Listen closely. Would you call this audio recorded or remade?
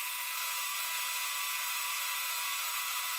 remade